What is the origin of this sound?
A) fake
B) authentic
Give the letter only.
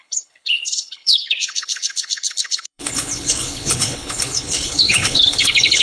A